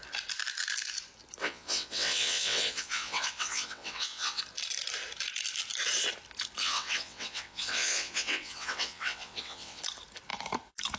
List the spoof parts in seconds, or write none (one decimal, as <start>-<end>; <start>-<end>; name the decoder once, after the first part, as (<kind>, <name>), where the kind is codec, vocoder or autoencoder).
1.4-4.4 (vocoder, WaveNeXt); 6.6-9.8

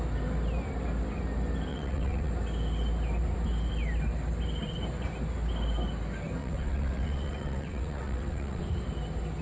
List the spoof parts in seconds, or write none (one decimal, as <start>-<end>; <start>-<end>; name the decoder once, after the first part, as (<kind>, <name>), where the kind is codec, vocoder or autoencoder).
1.7-2.3 (vocoder, WaveNeXt); 6.4-8.6

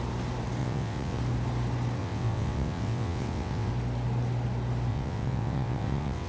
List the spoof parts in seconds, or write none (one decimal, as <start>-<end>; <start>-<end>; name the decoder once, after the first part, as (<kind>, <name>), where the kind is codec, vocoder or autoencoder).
0.6-1.2 (vocoder, WaveNeXt); 2.0-3.7; 4.9-6.3

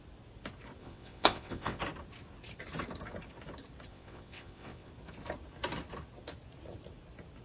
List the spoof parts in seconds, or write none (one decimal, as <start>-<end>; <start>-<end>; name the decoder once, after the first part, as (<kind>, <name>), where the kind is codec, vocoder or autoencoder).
0.8-1.8 (vocoder, WaveNeXt); 3.9-4.9

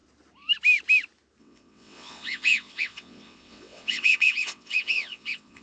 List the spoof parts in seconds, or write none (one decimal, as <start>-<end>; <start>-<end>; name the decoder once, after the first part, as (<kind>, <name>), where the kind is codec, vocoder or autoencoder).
1.4-5.6 (vocoder, WaveNeXt)

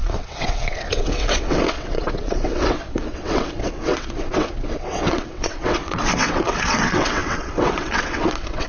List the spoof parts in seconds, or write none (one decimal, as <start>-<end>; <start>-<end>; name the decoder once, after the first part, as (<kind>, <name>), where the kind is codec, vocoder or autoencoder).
0.0-8.7 (vocoder, WaveNeXt)

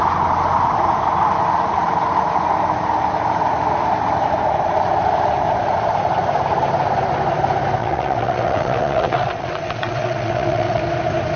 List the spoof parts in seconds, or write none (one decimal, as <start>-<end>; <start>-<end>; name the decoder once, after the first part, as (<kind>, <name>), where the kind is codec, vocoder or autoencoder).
7.8-10.8 (vocoder, WaveNeXt)

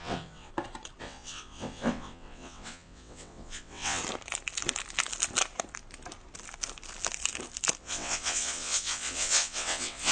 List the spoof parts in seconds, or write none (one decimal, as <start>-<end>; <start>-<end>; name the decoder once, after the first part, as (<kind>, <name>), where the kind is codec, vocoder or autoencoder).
0.0-0.5 (vocoder, WaveNeXt); 1.0-4.0; 7.8-10.1